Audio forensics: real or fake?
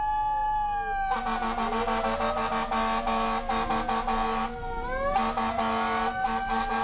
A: real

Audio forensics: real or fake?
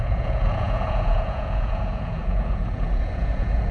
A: fake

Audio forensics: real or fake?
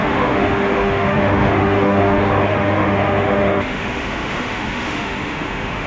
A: fake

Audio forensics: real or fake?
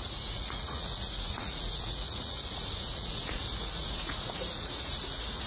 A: fake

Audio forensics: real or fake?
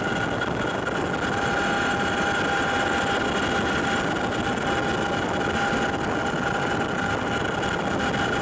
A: real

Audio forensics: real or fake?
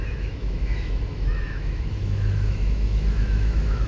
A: fake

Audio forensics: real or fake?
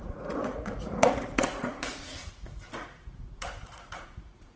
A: fake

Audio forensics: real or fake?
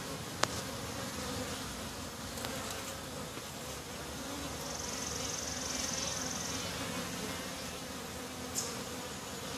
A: real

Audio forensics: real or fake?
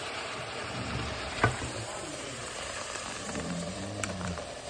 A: fake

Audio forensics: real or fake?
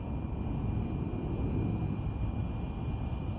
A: real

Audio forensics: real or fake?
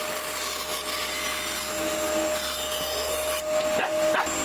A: real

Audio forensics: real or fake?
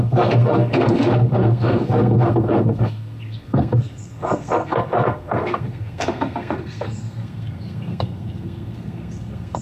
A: fake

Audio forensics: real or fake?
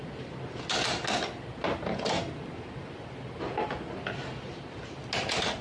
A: real